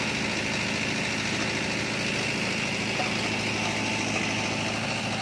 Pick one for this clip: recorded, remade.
recorded